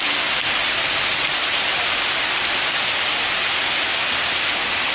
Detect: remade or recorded recorded